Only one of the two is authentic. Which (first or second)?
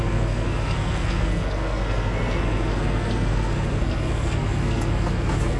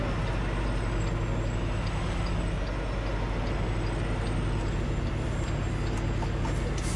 second